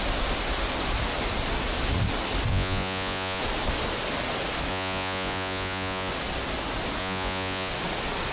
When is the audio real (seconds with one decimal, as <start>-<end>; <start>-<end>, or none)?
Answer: 0.0-2.5; 3.4-4.7; 6.1-7.0; 7.7-8.3

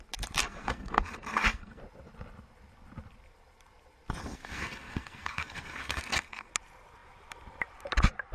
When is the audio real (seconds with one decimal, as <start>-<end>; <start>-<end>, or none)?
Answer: 0.0-0.4; 1.8-4.2; 6.5-8.3